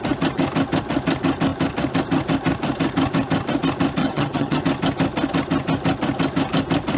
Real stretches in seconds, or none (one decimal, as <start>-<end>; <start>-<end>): 0.0-4.0; 4.6-7.0